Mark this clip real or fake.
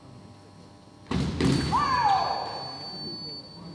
real